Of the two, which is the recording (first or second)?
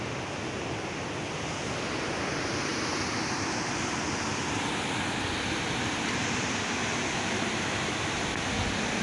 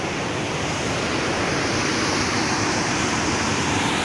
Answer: first